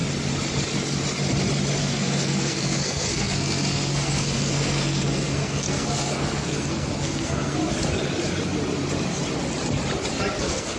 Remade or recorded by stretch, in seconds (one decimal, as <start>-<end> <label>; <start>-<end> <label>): 0.0-1.8 recorded; 1.8-7.6 remade; 7.6-10.4 recorded; 10.4-10.8 remade